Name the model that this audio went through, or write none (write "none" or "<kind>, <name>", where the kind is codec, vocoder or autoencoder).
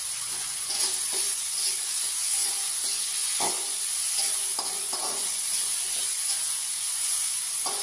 vocoder, Vocos